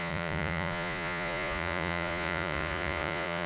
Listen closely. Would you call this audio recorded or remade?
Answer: remade